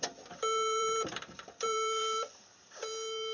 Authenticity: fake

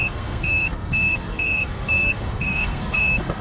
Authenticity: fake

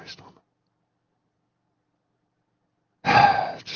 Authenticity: real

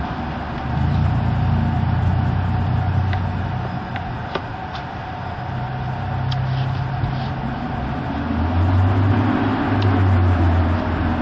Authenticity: real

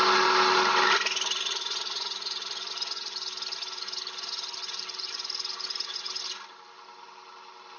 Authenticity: real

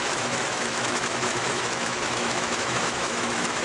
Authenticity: fake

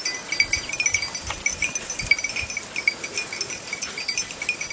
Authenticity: real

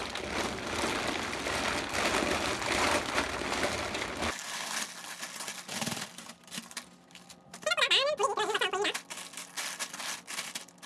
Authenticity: real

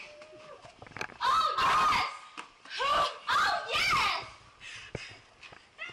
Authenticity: real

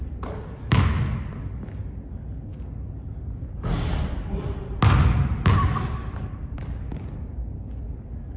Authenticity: real